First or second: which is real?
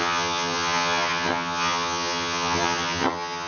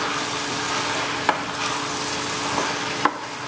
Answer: second